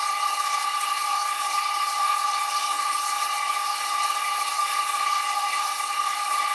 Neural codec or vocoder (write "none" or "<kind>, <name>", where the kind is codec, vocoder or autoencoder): codec, HILCodec